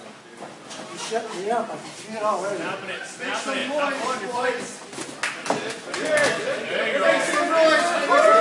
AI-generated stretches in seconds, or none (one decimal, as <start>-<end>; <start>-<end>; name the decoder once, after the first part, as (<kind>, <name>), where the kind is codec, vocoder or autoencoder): none